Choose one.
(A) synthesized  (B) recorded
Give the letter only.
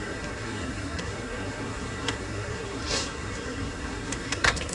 A